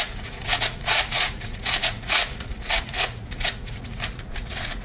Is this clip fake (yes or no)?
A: yes